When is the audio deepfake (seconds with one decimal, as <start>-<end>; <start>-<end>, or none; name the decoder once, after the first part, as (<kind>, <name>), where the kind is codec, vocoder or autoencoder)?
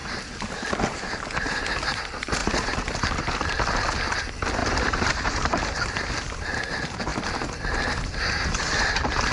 0.0-0.7 (vocoder, BigVGAN v2); 2.4-3.2; 4.6-6.1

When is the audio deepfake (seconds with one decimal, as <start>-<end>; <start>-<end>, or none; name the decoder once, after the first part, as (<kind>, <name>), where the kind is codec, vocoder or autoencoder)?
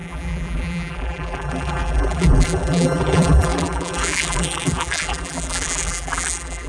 0.0-6.7 (vocoder, BigVGAN v2)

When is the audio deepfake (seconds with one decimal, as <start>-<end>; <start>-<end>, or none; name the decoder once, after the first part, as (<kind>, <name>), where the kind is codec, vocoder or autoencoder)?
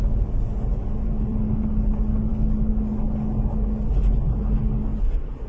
0.7-1.9 (vocoder, BigVGAN v2); 4.9-5.5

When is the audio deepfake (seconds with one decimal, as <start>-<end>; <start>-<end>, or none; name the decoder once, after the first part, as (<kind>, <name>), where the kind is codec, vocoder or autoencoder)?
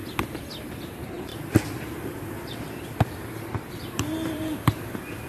0.0-0.5 (vocoder, BigVGAN v2); 1.3-4.5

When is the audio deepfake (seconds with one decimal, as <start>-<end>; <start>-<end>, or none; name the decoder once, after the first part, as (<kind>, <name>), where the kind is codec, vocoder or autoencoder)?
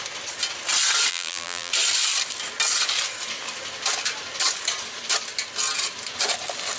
1.1-1.7 (vocoder, BigVGAN v2)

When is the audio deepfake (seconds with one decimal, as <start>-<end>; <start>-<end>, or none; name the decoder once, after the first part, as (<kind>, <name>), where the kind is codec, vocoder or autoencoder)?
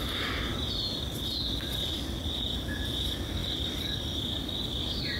3.4-4.6 (vocoder, BigVGAN v2)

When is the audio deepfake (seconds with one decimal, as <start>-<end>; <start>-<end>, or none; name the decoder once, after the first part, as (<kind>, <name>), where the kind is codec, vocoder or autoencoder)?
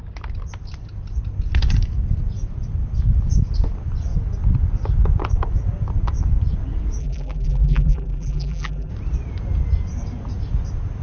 7.0-8.9 (vocoder, BigVGAN v2)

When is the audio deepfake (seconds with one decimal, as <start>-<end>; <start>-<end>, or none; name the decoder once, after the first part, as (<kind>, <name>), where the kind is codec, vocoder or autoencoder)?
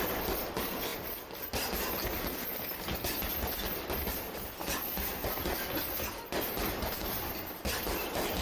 none